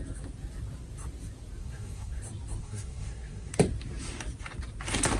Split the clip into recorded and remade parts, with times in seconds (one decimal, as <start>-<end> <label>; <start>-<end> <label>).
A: 0.0-1.6 recorded; 1.6-2.2 remade; 2.2-2.6 recorded; 2.6-3.5 remade; 3.5-5.2 recorded